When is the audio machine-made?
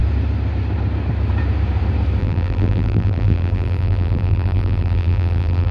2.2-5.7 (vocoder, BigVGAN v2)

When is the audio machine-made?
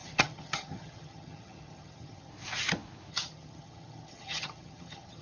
0.0-2.3 (vocoder, HiFi-GAN); 3.1-5.2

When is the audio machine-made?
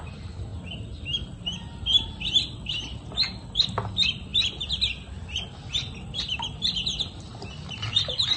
none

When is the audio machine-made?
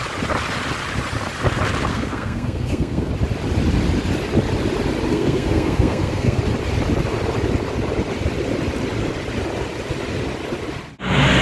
1.9-3.1 (codec, SNAC); 5.1-6.4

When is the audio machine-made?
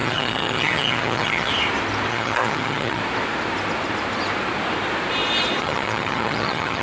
0.0-1.5 (vocoder, HiFi-GAN); 2.1-3.0; 5.6-6.8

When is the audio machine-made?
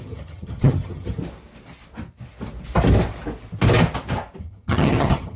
0.0-1.2 (vocoder, HiFi-GAN); 4.4-5.4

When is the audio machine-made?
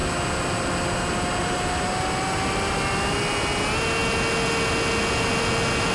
none